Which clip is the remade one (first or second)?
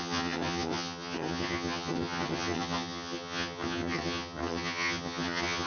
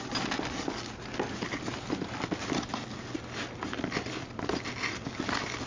first